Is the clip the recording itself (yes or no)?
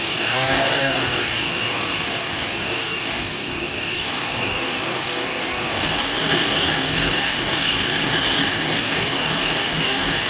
no